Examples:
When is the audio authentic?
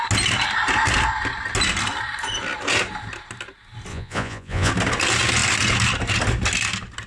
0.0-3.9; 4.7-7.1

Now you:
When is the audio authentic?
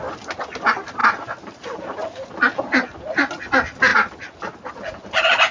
0.0-5.5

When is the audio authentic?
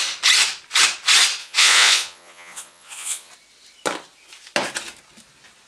0.0-1.4; 3.3-5.7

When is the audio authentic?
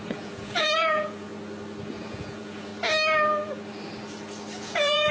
1.3-1.9; 2.7-4.6